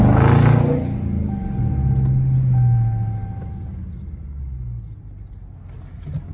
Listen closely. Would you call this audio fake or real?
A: real